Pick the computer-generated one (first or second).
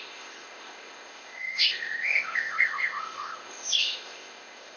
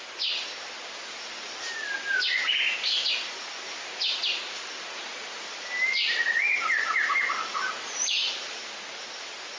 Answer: first